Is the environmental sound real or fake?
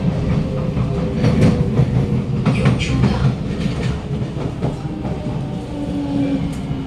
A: real